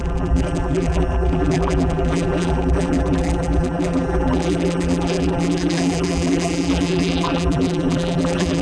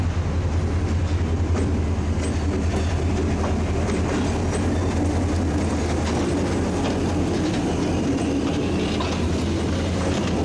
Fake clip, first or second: first